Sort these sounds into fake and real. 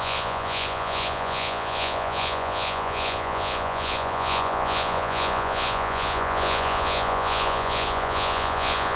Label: fake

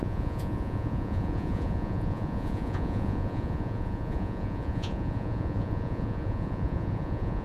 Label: fake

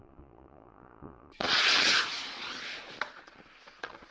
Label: fake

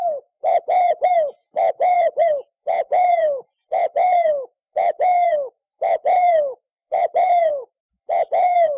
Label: fake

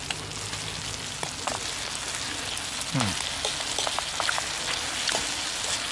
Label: real